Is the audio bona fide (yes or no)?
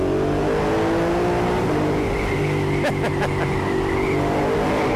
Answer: yes